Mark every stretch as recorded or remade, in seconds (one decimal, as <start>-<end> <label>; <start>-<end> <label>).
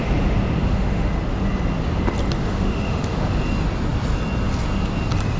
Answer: 0.0-0.6 recorded; 0.6-1.1 remade; 1.1-2.4 recorded; 2.4-3.3 remade; 3.3-5.4 recorded